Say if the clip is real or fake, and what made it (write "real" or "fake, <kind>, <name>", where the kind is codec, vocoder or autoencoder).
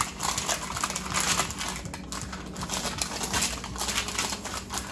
real